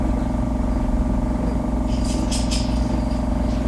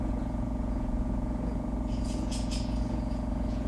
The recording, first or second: first